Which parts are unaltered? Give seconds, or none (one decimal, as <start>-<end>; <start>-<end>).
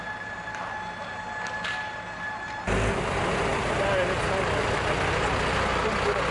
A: 0.0-6.3